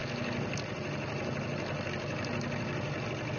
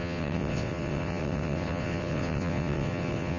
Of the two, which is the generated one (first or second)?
second